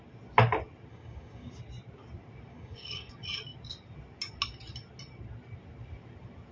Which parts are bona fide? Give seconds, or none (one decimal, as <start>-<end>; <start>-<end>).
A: 0.0-0.9; 1.5-2.5; 3.1-6.5